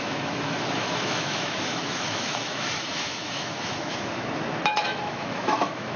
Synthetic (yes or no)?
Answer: yes